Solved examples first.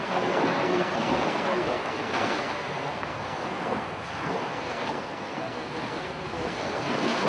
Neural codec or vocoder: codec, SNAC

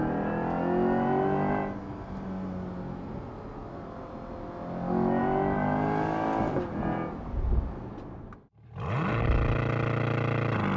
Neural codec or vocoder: none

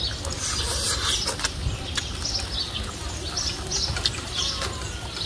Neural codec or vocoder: none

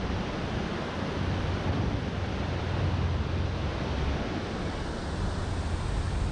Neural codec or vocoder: none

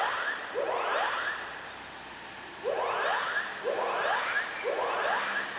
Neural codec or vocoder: none